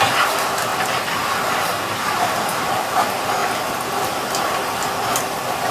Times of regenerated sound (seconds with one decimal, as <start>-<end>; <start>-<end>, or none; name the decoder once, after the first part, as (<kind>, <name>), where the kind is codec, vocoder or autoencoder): none

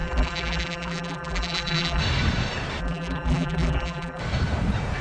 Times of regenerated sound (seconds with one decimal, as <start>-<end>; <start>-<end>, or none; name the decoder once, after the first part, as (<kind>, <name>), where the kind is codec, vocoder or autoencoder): 0.0-2.0 (vocoder, BigVGAN v2); 2.8-4.2

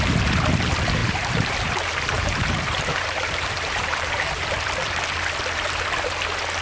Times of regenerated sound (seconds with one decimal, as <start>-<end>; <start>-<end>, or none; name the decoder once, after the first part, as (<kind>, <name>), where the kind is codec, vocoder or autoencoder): 1.0-4.5 (vocoder, BigVGAN v2)

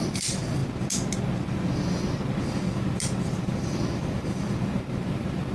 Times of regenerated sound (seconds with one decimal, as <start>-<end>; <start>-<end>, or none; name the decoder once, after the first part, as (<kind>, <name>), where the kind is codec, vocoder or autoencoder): 0.0-0.6 (vocoder, BigVGAN v2); 3.2-5.5